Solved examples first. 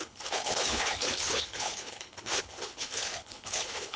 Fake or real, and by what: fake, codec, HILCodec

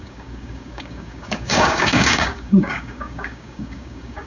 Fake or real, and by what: fake, codec, DAC